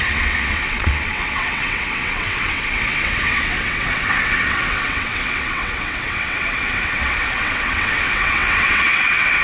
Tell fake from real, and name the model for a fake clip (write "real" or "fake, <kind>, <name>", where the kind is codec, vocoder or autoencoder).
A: fake, vocoder, WaveNeXt